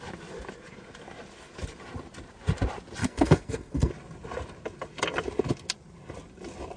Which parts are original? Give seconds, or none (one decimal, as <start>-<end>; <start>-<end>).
0.0-3.0; 3.9-6.8